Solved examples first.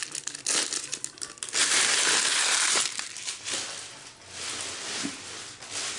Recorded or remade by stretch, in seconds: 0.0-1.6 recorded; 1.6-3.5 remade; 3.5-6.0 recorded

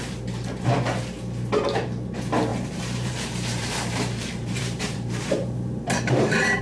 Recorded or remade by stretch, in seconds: 0.0-2.5 recorded; 2.5-6.6 remade